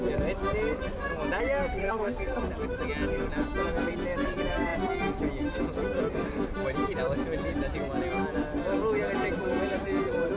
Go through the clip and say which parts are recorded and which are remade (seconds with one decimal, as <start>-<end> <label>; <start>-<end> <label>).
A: 0.0-1.8 recorded; 1.8-2.4 remade; 2.4-10.4 recorded